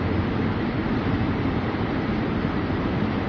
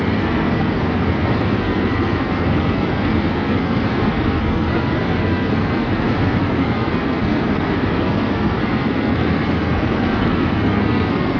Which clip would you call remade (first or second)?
second